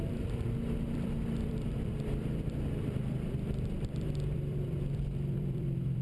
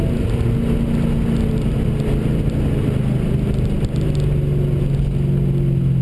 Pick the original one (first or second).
second